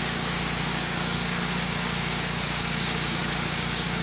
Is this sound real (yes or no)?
no